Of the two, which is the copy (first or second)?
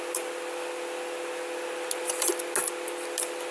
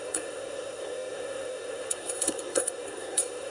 second